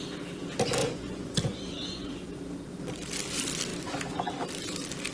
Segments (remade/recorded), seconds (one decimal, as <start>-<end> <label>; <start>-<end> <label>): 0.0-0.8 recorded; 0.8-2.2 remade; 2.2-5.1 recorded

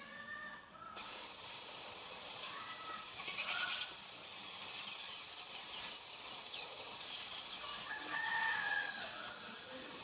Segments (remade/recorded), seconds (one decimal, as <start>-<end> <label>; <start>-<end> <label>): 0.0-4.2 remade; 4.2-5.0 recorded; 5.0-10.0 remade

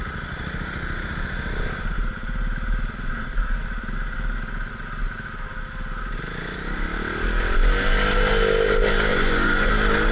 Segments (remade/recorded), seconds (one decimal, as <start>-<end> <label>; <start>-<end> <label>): 0.0-9.1 recorded; 9.1-9.7 remade; 9.7-10.1 recorded

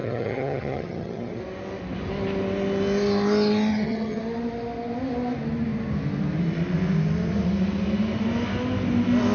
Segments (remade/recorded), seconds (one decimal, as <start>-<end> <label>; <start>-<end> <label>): 0.0-1.4 remade; 1.4-3.7 recorded; 3.7-4.2 remade; 4.2-9.3 recorded

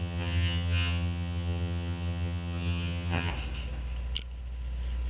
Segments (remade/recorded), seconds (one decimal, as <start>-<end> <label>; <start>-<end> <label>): 0.0-3.3 remade; 3.3-5.1 recorded

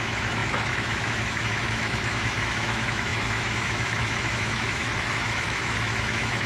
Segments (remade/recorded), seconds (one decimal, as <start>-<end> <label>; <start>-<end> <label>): 0.0-6.5 remade